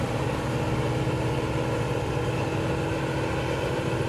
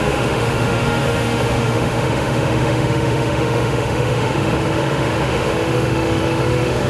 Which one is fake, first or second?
second